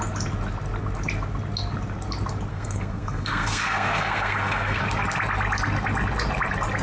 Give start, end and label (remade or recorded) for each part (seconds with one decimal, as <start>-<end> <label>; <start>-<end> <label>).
0.0-2.5 recorded; 2.5-4.8 remade; 4.8-6.8 recorded